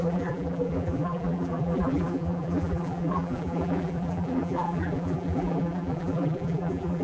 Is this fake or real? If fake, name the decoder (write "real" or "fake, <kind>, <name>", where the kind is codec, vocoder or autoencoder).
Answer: fake, vocoder, BigVGAN v2